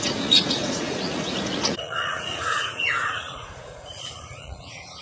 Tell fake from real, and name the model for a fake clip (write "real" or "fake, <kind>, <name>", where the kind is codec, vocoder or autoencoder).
fake, vocoder, Vocos